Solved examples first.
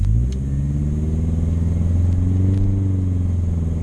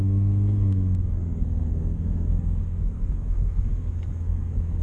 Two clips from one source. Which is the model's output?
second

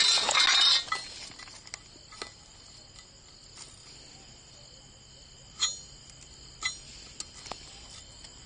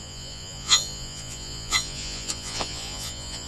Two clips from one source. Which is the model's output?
second